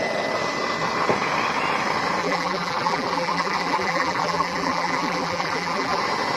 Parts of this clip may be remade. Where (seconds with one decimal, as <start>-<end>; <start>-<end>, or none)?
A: 2.2-6.0